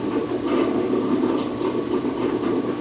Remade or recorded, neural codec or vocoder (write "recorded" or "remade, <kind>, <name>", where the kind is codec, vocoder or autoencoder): remade, vocoder, BigVGAN v2